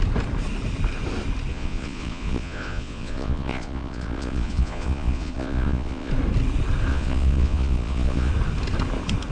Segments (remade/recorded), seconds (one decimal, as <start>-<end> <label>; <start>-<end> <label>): 0.0-1.5 recorded; 1.5-6.1 remade; 6.1-6.9 recorded; 6.9-8.3 remade; 8.3-9.3 recorded